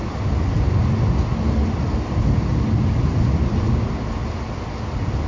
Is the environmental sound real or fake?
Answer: real